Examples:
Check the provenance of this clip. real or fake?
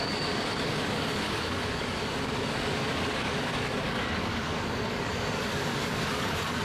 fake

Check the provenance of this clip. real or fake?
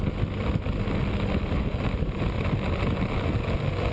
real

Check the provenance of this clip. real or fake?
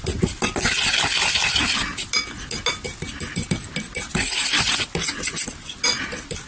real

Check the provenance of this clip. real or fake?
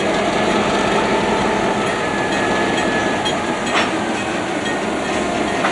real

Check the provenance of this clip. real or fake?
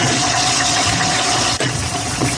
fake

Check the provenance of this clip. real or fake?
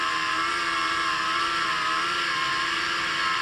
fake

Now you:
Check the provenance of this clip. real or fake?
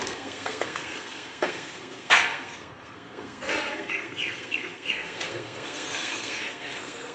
fake